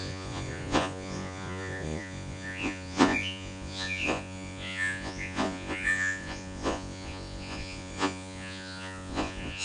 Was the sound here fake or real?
fake